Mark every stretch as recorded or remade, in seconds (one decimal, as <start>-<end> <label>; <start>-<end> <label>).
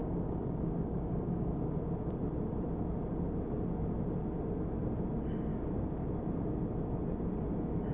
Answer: 0.0-1.8 remade; 1.8-5.5 recorded; 5.5-6.1 remade; 6.1-7.9 recorded